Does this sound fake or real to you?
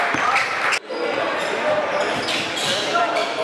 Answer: real